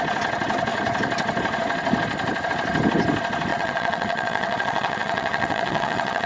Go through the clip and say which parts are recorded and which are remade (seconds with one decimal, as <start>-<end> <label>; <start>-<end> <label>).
0.0-3.5 recorded; 3.5-6.3 remade